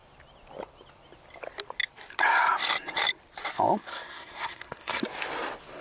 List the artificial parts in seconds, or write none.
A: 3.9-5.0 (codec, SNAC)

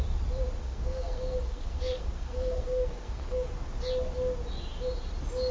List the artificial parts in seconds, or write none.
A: 0.6-3.5 (codec, SNAC)